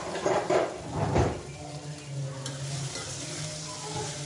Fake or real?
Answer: real